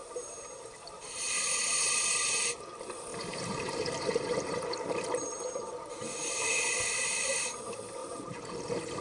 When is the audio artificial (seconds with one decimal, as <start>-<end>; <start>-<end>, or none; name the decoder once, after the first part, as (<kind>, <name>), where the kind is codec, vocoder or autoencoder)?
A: 0.0-2.6 (vocoder, BigVGAN v2); 3.1-7.6; 8.0-9.0